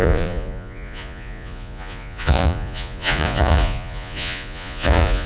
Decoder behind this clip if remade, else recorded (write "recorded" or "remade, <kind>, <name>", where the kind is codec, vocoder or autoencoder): remade, vocoder, Vocos